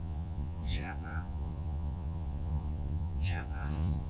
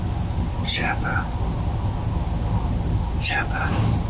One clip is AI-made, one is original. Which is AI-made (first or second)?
first